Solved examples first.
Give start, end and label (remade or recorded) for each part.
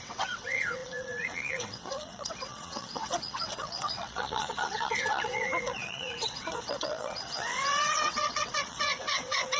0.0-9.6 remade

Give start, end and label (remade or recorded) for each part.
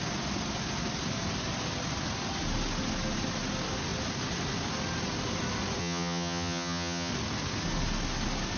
0.0-5.8 recorded; 5.8-7.1 remade; 7.1-8.6 recorded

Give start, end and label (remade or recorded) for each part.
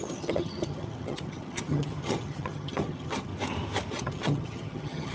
0.0-3.3 remade; 3.3-3.9 recorded; 3.9-5.1 remade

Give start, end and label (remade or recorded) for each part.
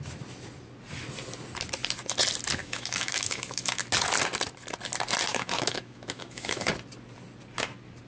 0.0-2.6 recorded; 2.6-3.8 remade; 3.8-5.3 recorded; 5.3-6.7 remade; 6.7-8.1 recorded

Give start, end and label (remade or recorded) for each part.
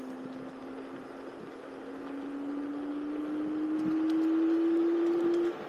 0.0-5.7 recorded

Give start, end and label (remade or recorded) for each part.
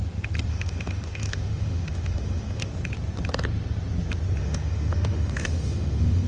0.0-0.5 recorded; 0.5-2.7 remade; 2.7-4.4 recorded; 4.4-6.3 remade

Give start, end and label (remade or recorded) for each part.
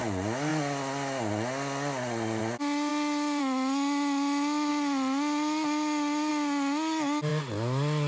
0.0-8.1 recorded